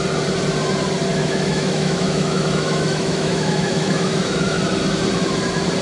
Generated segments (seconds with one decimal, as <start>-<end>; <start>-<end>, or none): 1.1-4.6